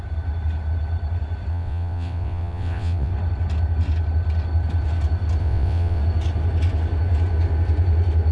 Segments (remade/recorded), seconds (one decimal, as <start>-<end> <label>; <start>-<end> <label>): 0.0-1.5 recorded; 1.5-3.1 remade; 3.1-5.4 recorded; 5.4-6.0 remade; 6.0-8.3 recorded